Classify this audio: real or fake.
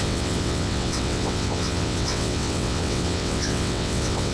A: fake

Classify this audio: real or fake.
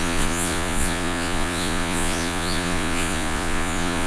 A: fake